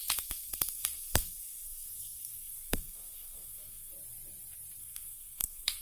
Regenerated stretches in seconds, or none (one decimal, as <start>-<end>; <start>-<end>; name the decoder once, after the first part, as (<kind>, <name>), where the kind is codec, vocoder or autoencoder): 0.0-3.9 (codec, SNAC); 4.8-5.8